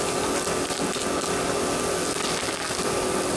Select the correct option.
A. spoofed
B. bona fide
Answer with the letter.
B